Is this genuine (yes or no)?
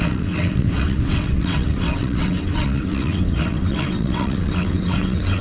no